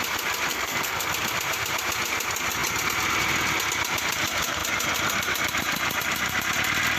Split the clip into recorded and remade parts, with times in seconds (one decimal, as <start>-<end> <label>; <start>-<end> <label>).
0.0-0.5 recorded; 0.5-1.1 remade; 1.1-7.0 recorded

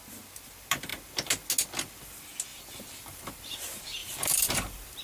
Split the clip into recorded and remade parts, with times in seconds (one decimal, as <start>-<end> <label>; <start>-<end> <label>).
0.0-2.5 recorded; 2.5-3.4 remade; 3.4-4.0 recorded; 4.0-5.0 remade